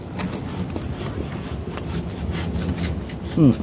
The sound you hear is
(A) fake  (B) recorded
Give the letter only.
B